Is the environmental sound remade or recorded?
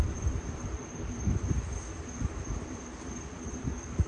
remade